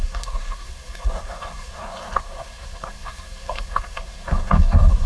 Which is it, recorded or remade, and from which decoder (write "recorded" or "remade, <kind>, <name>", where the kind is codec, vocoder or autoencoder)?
remade, codec, SNAC